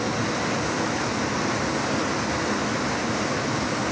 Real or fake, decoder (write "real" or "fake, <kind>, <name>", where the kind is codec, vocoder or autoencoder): real